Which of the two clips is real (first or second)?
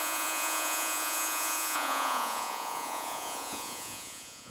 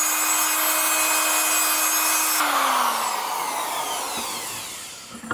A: second